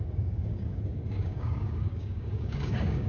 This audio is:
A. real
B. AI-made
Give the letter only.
B